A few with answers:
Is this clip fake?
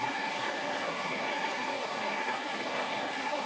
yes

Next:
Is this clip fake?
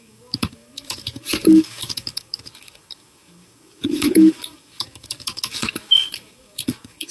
yes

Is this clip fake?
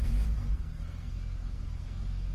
yes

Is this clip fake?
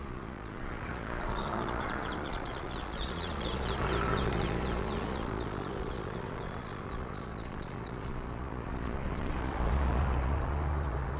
yes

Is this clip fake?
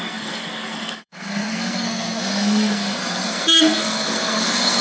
yes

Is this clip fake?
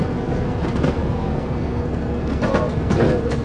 yes